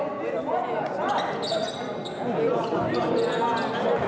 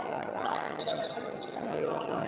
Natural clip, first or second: first